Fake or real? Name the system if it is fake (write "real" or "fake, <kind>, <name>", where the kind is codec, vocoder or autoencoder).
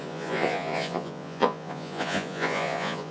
fake, vocoder, Vocos